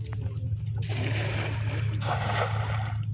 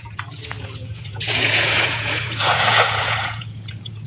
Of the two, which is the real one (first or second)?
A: first